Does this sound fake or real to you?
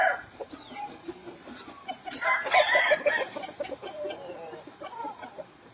fake